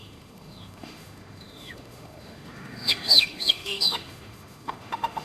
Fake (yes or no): yes